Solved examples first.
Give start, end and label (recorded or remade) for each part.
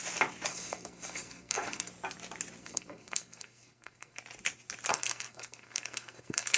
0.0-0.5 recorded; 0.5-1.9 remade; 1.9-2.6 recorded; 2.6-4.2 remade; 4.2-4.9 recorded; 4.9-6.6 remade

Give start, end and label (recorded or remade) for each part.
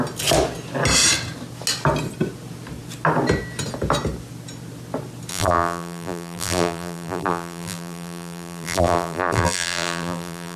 0.0-5.3 recorded; 5.3-10.6 remade